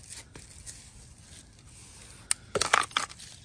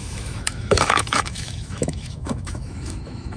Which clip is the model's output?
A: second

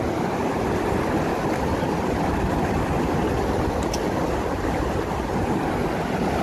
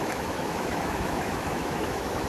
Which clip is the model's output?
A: second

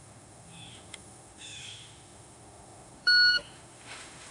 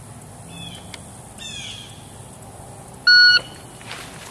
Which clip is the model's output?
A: first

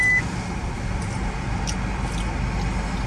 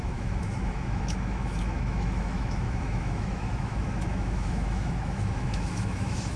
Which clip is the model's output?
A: second